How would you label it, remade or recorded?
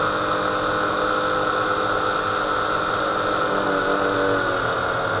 recorded